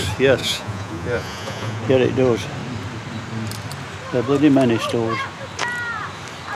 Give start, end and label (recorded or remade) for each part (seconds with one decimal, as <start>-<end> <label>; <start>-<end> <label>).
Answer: 0.0-0.4 recorded; 0.4-1.8 remade; 1.8-6.5 recorded

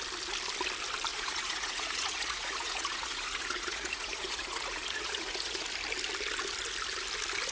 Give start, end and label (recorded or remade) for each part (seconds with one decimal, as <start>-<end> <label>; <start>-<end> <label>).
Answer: 0.0-1.1 recorded; 1.1-5.6 remade; 5.6-7.5 recorded

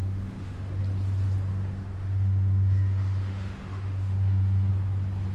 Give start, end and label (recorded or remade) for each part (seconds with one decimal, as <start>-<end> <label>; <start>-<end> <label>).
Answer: 0.0-0.8 remade; 0.8-1.5 recorded; 1.5-4.7 remade; 4.7-5.3 recorded

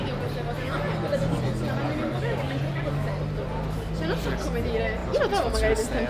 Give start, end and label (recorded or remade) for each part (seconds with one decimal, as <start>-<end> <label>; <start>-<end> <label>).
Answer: 0.0-6.1 recorded

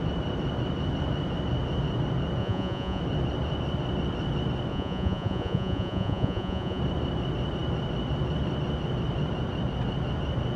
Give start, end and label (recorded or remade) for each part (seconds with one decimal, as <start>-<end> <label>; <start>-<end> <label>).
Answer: 0.0-2.4 recorded; 2.4-3.0 remade; 3.0-4.7 recorded; 4.7-6.8 remade; 6.8-10.6 recorded

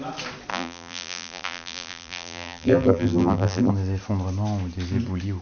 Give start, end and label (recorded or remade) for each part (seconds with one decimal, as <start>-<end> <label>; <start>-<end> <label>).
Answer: 0.0-0.5 recorded; 0.5-3.7 remade; 3.7-5.4 recorded

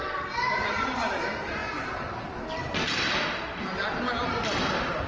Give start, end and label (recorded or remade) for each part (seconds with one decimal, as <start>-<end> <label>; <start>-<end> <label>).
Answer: 0.0-5.1 recorded

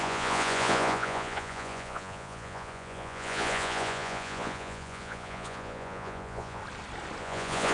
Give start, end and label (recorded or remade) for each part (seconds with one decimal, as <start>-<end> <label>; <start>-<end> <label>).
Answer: 0.0-6.6 remade; 6.6-7.2 recorded; 7.2-7.7 remade